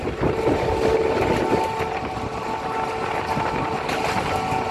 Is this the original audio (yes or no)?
yes